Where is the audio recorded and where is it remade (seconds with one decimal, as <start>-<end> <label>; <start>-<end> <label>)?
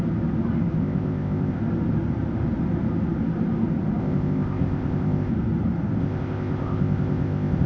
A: 0.0-0.8 recorded; 0.8-1.6 remade; 1.6-4.0 recorded; 4.0-5.3 remade; 5.3-6.0 recorded; 6.0-7.7 remade